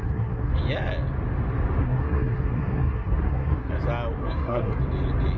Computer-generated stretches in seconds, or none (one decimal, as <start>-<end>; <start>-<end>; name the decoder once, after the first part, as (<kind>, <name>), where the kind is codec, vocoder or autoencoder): 0.0-0.6 (codec, SNAC); 1.8-3.7; 4.2-4.8